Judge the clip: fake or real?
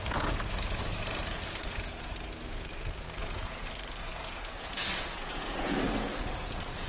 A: fake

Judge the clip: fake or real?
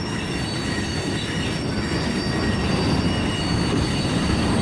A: real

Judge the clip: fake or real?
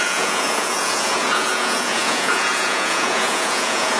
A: fake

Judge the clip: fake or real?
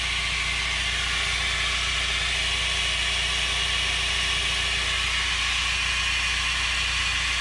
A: real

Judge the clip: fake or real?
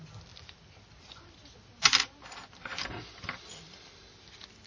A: real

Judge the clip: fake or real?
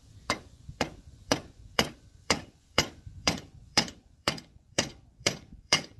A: fake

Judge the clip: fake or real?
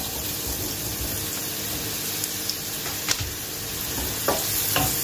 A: real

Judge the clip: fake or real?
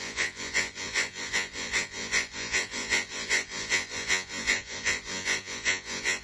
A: fake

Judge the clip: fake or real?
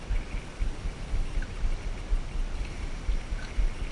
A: real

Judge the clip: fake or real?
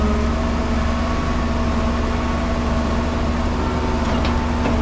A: real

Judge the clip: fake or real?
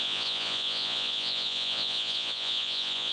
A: fake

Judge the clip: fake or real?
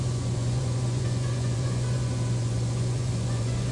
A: fake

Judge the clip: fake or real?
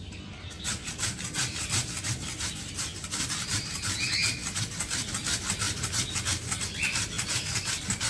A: real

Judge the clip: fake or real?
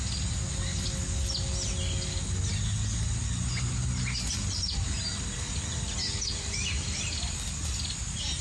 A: real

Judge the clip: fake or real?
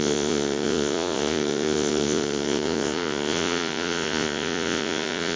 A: fake